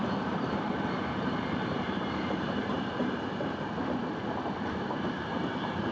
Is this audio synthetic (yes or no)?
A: yes